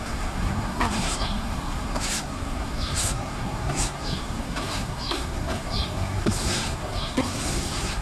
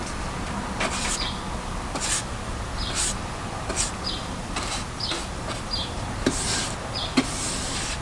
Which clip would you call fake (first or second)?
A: first